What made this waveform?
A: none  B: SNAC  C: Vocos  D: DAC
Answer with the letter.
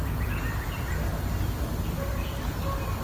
A